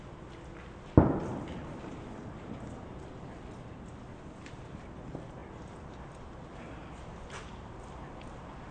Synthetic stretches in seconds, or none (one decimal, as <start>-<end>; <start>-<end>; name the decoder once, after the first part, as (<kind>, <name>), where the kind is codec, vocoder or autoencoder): none